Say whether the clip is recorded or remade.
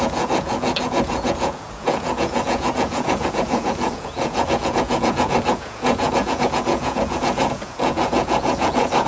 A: remade